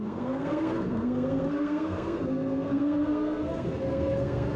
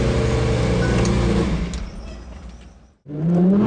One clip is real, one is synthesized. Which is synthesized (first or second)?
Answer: first